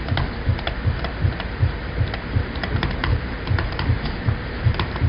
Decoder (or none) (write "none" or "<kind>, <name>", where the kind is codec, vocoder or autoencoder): vocoder, BigVGAN v2